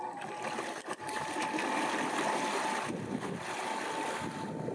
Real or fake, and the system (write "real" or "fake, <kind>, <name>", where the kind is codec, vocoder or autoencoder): real